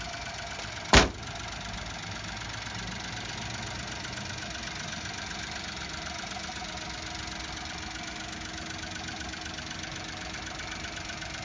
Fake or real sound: real